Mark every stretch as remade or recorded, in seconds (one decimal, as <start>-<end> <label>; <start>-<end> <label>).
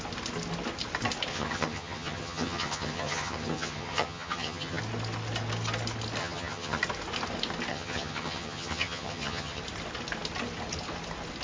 0.0-1.3 recorded; 1.3-4.8 remade; 4.8-6.2 recorded; 6.2-6.8 remade; 6.8-7.7 recorded; 7.7-9.6 remade; 9.6-11.4 recorded